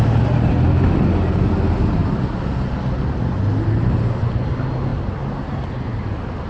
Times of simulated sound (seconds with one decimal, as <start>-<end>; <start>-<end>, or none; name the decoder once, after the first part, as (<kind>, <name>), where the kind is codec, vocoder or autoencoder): none